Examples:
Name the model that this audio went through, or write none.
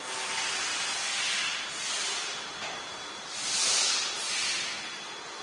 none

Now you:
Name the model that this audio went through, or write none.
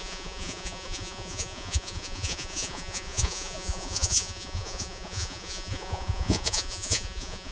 vocoder, Vocos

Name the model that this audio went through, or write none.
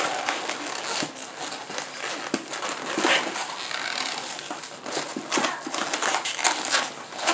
none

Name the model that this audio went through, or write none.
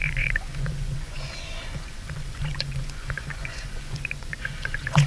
vocoder, Vocos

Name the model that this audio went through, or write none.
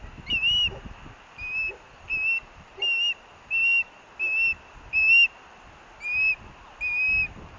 none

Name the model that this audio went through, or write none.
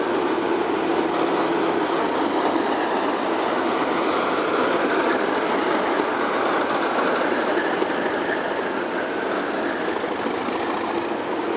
none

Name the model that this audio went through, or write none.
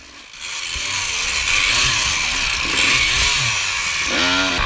none